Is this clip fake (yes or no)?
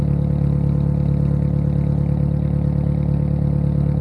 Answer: no